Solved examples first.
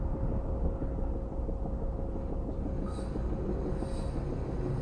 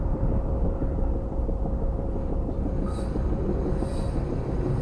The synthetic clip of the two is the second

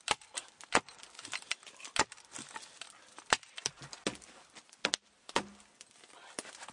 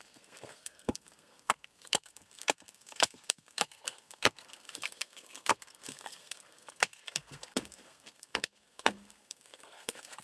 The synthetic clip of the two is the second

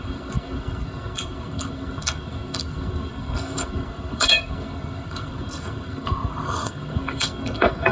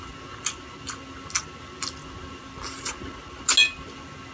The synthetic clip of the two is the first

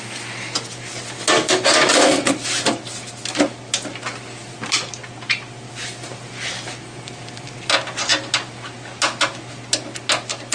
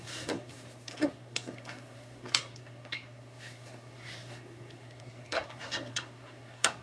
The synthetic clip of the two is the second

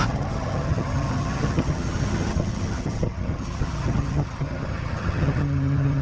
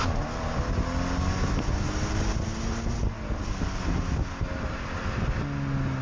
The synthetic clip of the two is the first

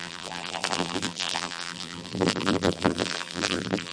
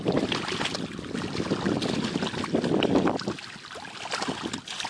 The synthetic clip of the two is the first